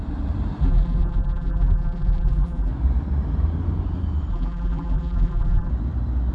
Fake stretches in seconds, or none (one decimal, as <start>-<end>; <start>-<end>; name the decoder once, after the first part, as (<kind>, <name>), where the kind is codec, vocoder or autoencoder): 0.6-2.7 (vocoder, BigVGAN v2); 4.3-5.7